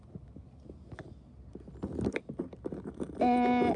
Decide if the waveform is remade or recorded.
recorded